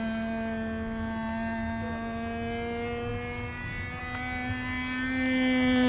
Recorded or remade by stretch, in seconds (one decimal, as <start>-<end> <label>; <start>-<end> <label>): 0.0-5.9 recorded